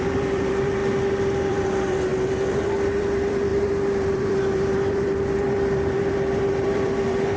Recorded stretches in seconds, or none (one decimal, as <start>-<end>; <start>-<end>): 0.8-1.5